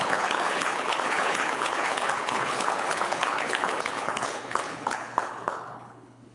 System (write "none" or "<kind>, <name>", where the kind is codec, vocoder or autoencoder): codec, HILCodec